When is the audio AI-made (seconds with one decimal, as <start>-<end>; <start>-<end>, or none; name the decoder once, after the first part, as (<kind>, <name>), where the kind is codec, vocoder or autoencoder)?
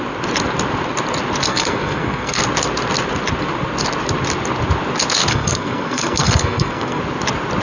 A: 1.5-2.4 (codec, SNAC); 5.2-7.0